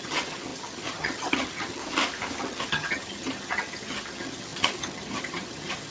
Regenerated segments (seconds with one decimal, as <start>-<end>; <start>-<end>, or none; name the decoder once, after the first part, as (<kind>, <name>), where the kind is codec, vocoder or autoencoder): 0.0-1.8 (vocoder, HiFi-GAN); 2.4-5.9